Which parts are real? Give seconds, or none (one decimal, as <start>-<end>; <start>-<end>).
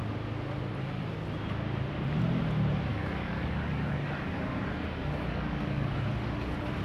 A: 0.0-2.9; 5.9-6.8